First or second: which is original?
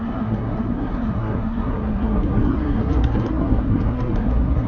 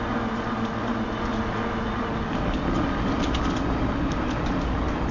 second